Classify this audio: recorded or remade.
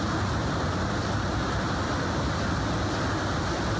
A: recorded